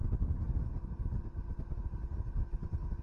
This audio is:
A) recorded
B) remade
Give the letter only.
A